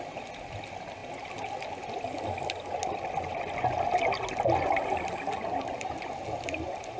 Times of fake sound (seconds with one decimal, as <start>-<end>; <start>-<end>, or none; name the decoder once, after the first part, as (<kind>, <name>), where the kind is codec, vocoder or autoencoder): none